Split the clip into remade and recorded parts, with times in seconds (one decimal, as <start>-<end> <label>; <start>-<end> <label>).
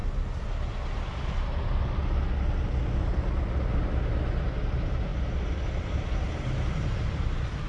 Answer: 0.0-4.6 recorded; 4.6-5.1 remade; 5.1-5.8 recorded; 5.8-7.7 remade